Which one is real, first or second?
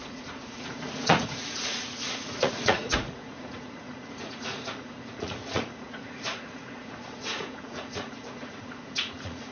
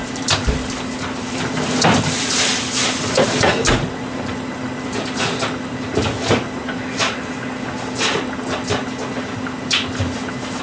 second